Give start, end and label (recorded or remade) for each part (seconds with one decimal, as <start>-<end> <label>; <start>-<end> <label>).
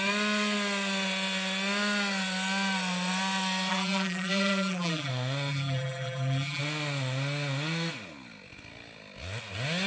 0.0-3.7 recorded; 3.7-5.1 remade; 5.1-5.5 recorded; 5.5-6.6 remade; 6.6-9.9 recorded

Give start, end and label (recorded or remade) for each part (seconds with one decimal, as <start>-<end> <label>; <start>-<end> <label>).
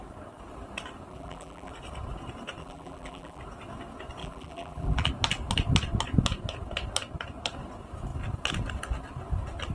0.0-1.1 recorded; 1.1-1.7 remade; 1.7-2.6 recorded; 2.6-3.4 remade; 3.4-4.2 recorded; 4.2-5.1 remade; 5.1-9.7 recorded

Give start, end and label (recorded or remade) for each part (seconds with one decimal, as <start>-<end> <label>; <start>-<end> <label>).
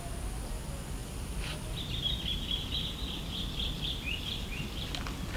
0.0-1.0 recorded; 1.0-4.2 remade; 4.2-5.4 recorded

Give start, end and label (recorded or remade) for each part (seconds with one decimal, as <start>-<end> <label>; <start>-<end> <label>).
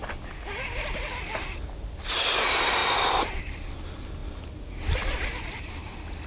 0.0-6.3 recorded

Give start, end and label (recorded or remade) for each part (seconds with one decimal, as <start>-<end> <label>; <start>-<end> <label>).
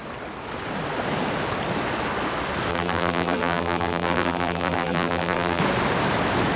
0.0-2.7 recorded; 2.7-5.6 remade; 5.6-6.6 recorded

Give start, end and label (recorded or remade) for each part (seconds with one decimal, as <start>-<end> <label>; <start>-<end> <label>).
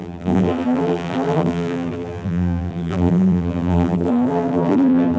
0.0-5.2 remade